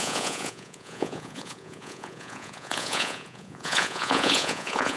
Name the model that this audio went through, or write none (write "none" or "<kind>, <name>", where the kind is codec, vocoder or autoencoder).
vocoder, Vocos